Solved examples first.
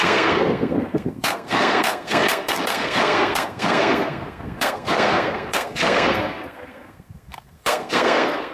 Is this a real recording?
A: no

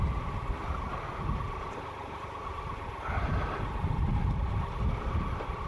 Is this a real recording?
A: yes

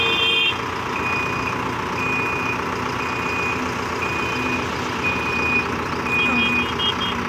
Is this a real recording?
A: yes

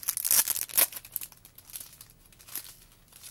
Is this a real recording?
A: yes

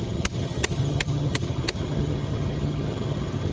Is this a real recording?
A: no